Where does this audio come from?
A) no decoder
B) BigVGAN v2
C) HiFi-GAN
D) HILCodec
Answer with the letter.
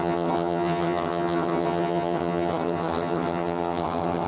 C